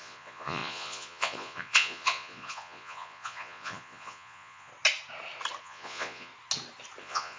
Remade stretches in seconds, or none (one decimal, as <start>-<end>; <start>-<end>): 0.0-4.7; 5.6-6.3; 7.0-7.4